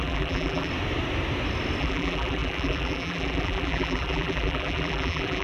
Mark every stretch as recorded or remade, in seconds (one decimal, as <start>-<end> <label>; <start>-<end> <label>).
0.0-0.7 remade; 0.7-1.8 recorded; 1.8-5.4 remade